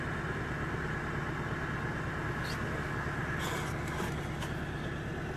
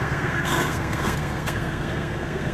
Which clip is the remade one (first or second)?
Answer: second